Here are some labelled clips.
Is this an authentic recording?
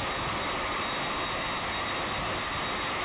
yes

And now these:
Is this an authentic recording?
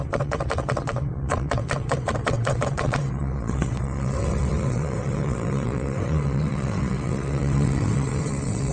no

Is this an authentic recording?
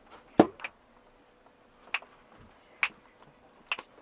yes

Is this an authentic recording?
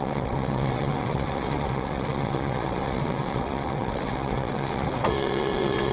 no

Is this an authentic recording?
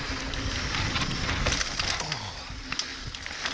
yes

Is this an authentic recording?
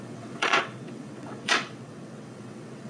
no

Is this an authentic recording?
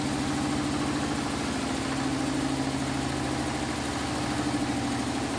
yes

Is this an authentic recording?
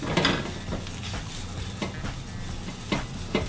yes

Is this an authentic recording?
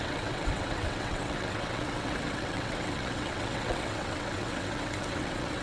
no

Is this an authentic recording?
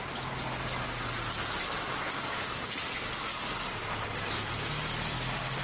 yes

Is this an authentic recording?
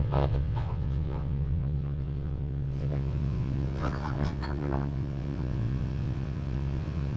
no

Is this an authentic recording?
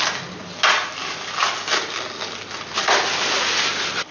yes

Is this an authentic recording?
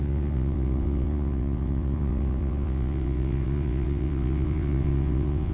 no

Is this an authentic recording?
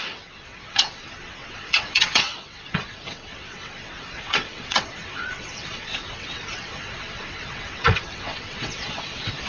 no